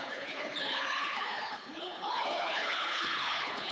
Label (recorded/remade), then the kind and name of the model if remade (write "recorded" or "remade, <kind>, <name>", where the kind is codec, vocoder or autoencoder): remade, codec, HILCodec